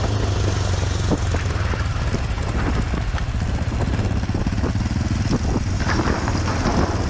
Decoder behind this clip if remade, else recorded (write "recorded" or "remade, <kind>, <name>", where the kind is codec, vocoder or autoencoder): recorded